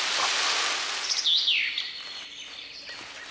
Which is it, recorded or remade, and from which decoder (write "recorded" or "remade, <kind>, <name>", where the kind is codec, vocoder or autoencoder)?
recorded